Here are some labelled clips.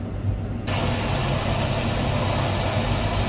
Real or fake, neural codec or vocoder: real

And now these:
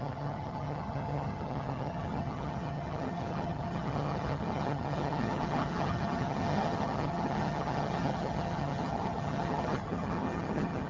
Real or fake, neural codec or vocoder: fake, vocoder, HiFi-GAN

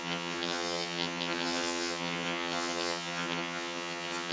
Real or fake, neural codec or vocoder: fake, vocoder, HiFi-GAN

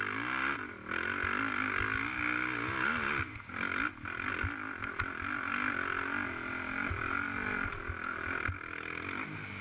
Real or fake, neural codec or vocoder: real